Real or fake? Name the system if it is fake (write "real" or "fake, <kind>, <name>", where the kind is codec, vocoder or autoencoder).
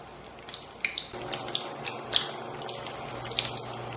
real